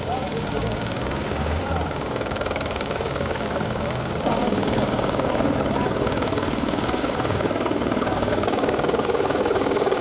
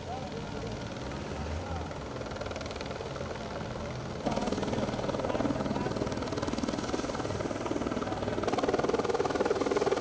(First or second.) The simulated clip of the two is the first